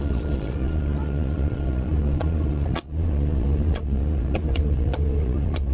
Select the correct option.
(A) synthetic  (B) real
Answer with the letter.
A